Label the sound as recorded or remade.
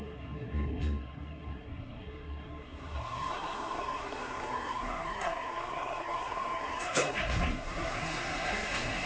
remade